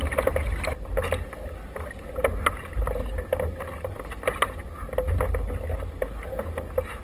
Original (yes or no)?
yes